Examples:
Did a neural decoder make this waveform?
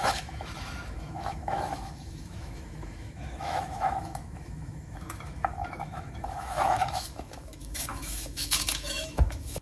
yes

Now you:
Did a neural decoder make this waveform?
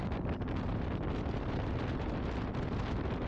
no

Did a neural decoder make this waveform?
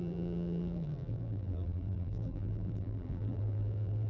yes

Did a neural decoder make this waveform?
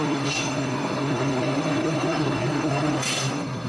yes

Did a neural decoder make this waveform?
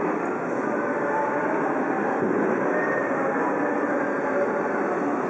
no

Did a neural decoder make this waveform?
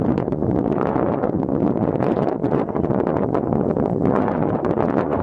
yes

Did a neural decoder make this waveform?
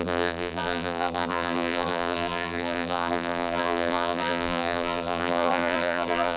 yes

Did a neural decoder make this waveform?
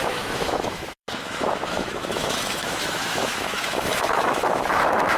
yes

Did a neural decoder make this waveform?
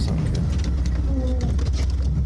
no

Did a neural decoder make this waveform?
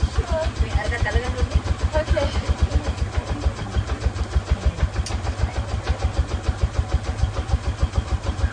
yes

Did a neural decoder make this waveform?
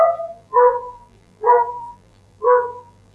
yes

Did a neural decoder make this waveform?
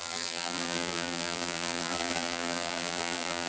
yes